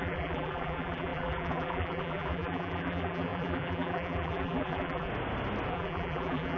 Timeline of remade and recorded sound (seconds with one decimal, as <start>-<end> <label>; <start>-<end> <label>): 0.0-5.1 remade; 5.1-5.7 recorded; 5.7-6.6 remade